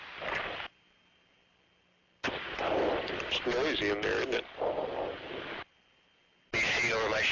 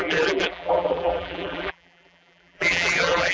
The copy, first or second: second